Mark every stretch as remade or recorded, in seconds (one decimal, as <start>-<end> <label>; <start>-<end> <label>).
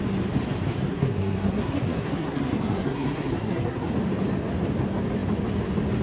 0.0-0.9 recorded; 0.9-3.9 remade; 3.9-6.0 recorded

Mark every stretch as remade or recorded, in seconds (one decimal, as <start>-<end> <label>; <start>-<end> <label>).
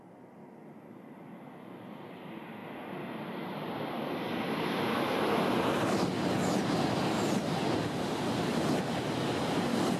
0.0-10.0 recorded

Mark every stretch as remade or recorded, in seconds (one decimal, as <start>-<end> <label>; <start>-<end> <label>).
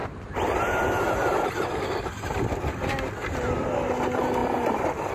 0.0-1.9 remade; 1.9-4.4 recorded; 4.4-5.1 remade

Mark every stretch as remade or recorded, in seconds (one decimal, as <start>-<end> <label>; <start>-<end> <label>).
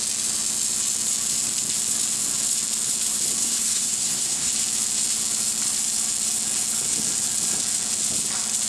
0.0-3.4 recorded; 3.4-4.5 remade; 4.5-8.7 recorded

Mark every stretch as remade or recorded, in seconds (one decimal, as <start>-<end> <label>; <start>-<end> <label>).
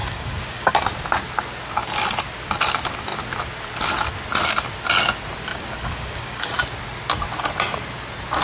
0.0-0.7 remade; 0.7-5.5 recorded; 5.5-6.5 remade; 6.5-8.4 recorded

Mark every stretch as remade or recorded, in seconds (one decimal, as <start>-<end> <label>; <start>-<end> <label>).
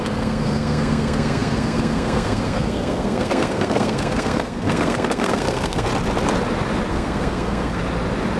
0.0-5.9 remade; 5.9-6.9 recorded; 6.9-7.8 remade; 7.8-8.4 recorded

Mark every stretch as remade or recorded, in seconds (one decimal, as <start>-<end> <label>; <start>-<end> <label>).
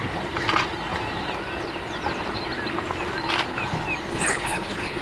0.0-4.1 recorded; 4.1-5.0 remade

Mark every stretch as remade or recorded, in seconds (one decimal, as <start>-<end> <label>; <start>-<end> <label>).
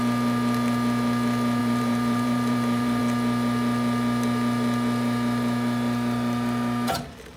0.0-1.6 recorded; 1.6-3.0 remade; 3.0-7.4 recorded